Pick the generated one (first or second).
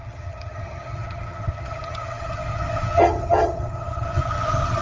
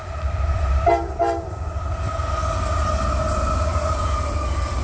first